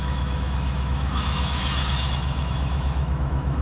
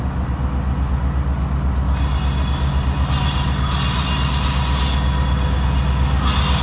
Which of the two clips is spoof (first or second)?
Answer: first